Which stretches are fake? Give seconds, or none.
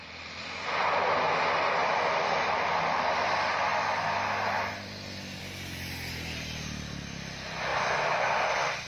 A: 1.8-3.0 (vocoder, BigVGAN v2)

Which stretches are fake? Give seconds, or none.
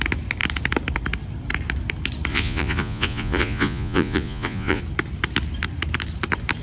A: 2.3-4.8 (vocoder, Vocos)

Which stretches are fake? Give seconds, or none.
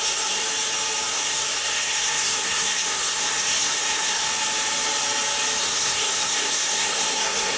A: 0.0-0.4 (codec, SNAC); 1.1-4.2; 5.6-7.6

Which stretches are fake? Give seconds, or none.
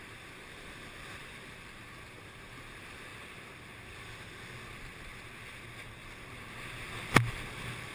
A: 0.0-3.1 (vocoder, BigVGAN v2); 7.3-7.9